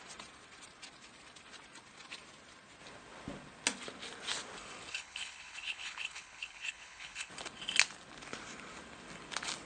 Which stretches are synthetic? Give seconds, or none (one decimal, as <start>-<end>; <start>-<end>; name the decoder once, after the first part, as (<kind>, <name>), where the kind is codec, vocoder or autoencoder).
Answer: 4.9-7.3 (codec, HILCodec)